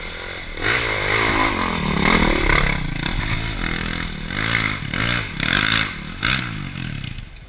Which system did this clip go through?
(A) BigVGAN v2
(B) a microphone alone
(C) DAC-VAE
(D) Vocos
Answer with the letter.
B